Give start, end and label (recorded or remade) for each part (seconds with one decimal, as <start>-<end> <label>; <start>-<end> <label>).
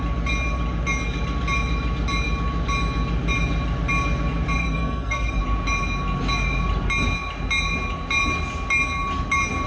0.0-4.6 recorded; 4.6-5.4 remade; 5.4-9.7 recorded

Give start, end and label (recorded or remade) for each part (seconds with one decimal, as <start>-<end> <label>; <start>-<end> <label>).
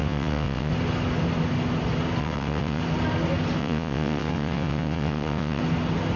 0.0-0.7 remade; 0.7-2.2 recorded; 2.2-2.8 remade; 2.8-3.6 recorded; 3.6-5.6 remade; 5.6-6.2 recorded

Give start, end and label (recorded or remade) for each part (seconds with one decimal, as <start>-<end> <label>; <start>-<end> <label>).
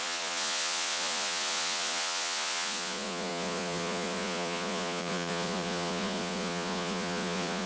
0.0-7.7 remade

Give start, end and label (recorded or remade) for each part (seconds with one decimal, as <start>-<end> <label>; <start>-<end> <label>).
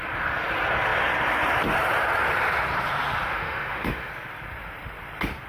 0.0-3.3 recorded; 3.3-4.1 remade; 4.1-5.5 recorded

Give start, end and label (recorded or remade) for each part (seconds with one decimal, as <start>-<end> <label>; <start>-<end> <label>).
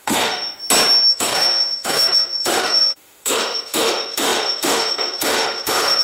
0.0-0.6 remade; 0.6-1.1 recorded; 1.1-6.0 remade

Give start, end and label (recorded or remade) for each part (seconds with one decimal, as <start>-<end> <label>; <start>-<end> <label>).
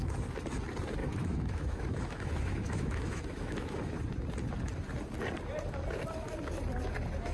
0.0-1.0 recorded; 1.0-3.9 remade; 3.9-7.3 recorded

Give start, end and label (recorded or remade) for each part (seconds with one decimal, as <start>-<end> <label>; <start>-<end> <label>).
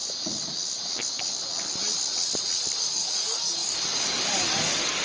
0.0-2.8 recorded; 2.8-5.0 remade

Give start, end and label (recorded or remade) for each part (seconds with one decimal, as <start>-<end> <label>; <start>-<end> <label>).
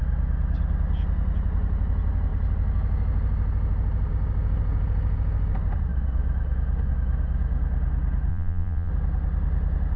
0.0-8.3 recorded; 8.3-8.9 remade; 8.9-10.0 recorded